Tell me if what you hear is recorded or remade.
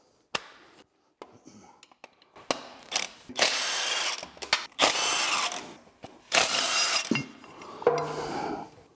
recorded